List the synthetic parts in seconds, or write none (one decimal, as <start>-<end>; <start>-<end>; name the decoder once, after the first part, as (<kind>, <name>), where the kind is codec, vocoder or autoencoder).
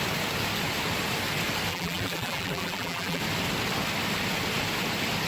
1.7-3.2 (vocoder, BigVGAN v2)